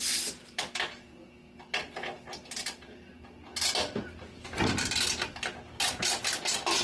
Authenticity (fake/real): real